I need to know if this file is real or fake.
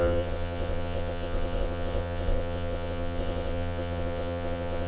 fake